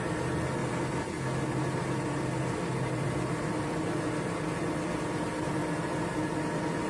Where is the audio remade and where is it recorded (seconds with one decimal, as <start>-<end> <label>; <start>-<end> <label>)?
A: 0.0-6.9 recorded